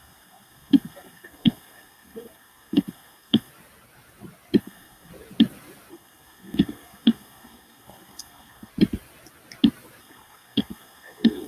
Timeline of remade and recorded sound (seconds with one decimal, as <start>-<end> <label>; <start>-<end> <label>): 0.0-3.5 remade; 3.5-4.6 recorded; 4.6-5.1 remade; 5.1-5.9 recorded; 5.9-8.7 remade; 8.7-10.0 recorded; 10.0-11.5 remade